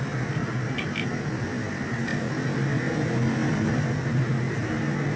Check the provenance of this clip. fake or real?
real